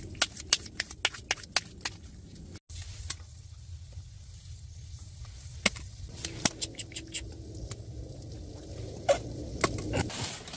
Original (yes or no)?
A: yes